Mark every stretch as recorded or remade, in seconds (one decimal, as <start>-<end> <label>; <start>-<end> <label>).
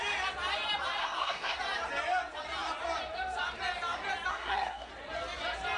0.0-1.0 recorded; 1.0-1.6 remade; 1.6-4.3 recorded; 4.3-4.9 remade; 4.9-5.8 recorded